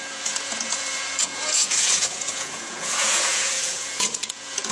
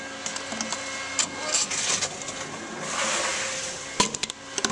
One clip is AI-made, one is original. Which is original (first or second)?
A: second